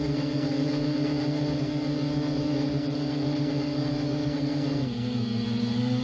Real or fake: fake